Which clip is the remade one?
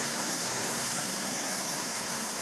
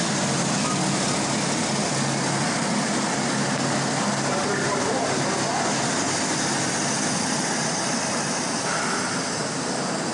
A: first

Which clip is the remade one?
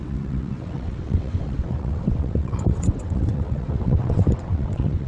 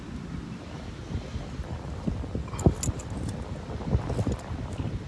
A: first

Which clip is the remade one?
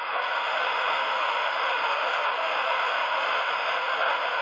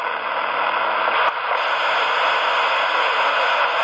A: first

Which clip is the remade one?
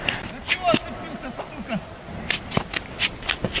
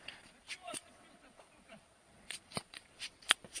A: second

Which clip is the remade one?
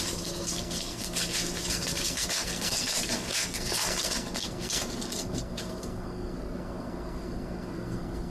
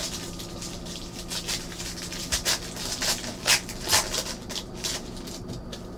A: first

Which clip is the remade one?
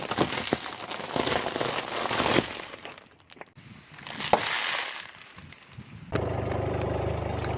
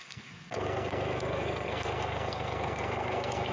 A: second